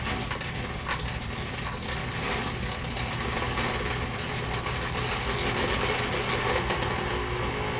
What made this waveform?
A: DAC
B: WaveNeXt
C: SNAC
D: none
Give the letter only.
D